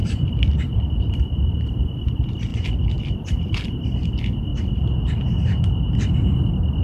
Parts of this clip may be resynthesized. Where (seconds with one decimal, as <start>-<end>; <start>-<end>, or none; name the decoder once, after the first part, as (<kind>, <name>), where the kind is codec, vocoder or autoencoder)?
0.0-2.5 (vocoder, BigVGAN v2); 3.0-4.5